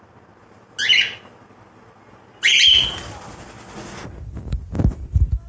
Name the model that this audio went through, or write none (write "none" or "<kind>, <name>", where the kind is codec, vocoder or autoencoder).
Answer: none